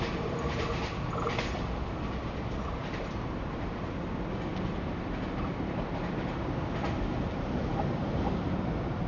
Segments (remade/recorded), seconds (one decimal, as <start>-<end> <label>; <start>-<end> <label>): 0.0-9.1 recorded